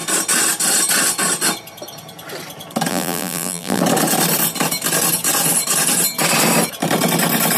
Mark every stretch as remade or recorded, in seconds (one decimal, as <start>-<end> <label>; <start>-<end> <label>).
0.0-2.9 recorded; 2.9-3.8 remade; 3.8-7.6 recorded